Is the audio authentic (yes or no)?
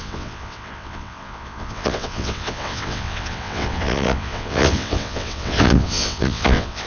no